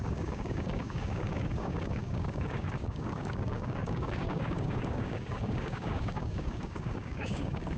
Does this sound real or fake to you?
fake